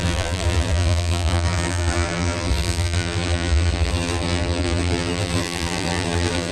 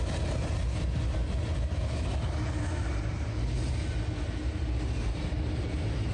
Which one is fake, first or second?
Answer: first